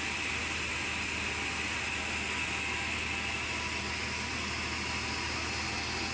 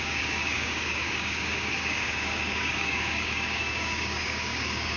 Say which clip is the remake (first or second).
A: second